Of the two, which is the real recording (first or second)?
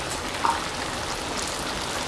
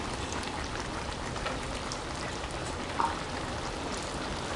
first